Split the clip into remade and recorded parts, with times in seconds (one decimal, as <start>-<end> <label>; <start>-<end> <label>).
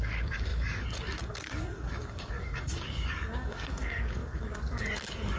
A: 0.0-5.4 remade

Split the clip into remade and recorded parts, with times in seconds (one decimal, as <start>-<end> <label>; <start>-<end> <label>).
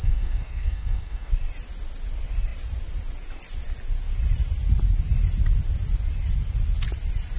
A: 0.0-1.3 remade; 1.3-7.4 recorded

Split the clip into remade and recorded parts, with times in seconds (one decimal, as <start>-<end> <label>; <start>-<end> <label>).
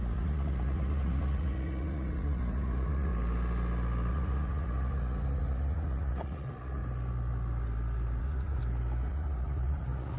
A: 0.0-3.1 remade; 3.1-4.1 recorded; 4.1-6.8 remade; 6.8-8.2 recorded; 8.2-8.6 remade; 8.6-9.1 recorded; 9.1-10.2 remade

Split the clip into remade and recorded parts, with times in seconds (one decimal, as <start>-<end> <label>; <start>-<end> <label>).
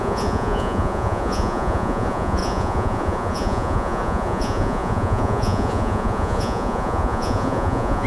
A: 0.0-8.1 remade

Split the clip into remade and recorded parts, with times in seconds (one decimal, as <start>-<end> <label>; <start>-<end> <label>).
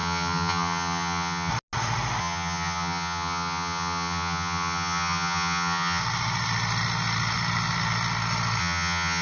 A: 0.0-1.5 remade; 1.5-2.2 recorded; 2.2-6.0 remade; 6.0-8.6 recorded; 8.6-9.2 remade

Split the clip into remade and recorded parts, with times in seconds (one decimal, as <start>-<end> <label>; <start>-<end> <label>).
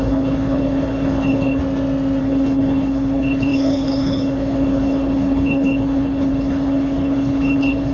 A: 0.0-1.6 remade; 1.6-2.2 recorded; 2.2-7.9 remade